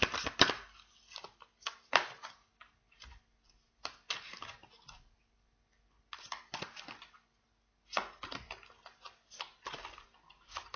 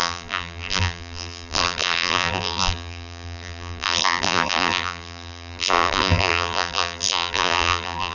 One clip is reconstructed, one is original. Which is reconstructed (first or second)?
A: second